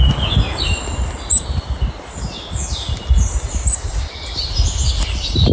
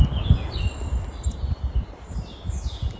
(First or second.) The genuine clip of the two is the first